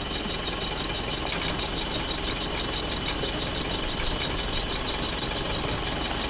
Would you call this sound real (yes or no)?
yes